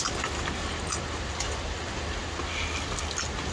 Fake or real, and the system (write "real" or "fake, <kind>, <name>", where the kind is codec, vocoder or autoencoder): real